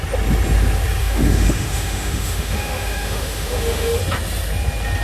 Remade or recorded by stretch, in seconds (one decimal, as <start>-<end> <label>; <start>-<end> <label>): 0.0-1.0 recorded; 1.0-4.0 remade; 4.0-5.0 recorded